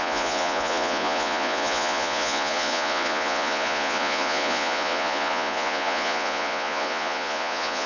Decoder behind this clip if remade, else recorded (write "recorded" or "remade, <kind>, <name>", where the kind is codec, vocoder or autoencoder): remade, vocoder, Vocos